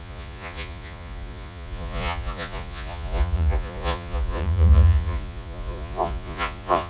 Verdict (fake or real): fake